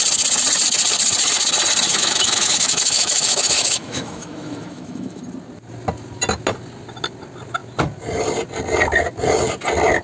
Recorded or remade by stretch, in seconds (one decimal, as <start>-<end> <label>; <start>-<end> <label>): 0.0-1.9 recorded; 1.9-5.2 remade; 5.2-10.0 recorded